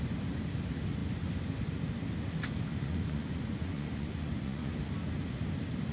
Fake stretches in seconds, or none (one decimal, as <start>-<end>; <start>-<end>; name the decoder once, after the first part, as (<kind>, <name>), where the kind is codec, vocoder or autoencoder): 2.7-4.7 (vocoder, Vocos)